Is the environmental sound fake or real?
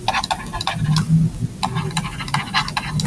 real